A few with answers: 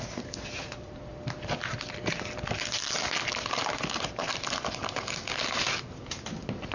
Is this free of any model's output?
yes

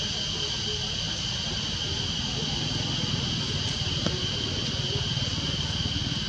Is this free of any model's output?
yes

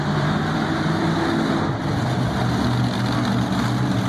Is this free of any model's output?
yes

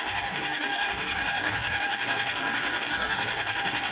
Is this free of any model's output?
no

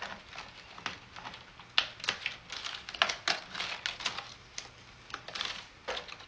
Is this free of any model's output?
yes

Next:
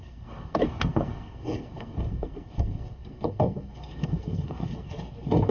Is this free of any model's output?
no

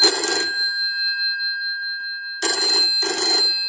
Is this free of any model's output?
yes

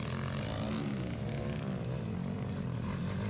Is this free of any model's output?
yes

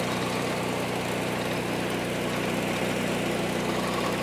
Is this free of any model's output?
yes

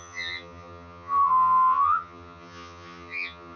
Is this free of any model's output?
no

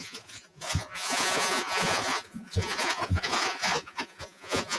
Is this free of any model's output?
no